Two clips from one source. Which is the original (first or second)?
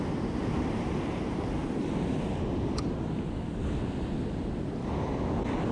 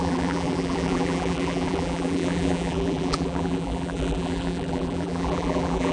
first